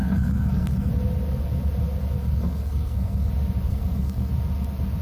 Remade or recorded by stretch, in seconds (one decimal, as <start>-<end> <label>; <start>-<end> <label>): 0.0-0.9 remade; 0.9-2.2 recorded; 2.2-3.3 remade; 3.3-3.7 recorded; 3.7-4.3 remade; 4.3-5.0 recorded